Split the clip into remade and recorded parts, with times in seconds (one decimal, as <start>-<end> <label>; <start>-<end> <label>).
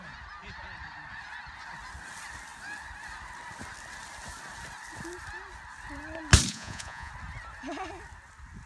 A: 0.0-6.5 recorded; 6.5-7.1 remade; 7.1-8.7 recorded